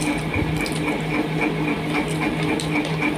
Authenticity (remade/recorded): recorded